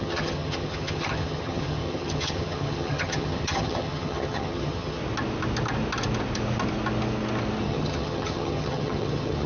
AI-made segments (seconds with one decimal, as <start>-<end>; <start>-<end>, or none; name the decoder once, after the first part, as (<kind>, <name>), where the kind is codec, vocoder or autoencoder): 0.0-5.0 (vocoder, HiFi-GAN); 7.6-9.5